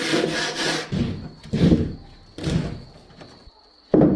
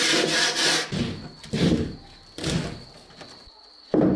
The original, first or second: second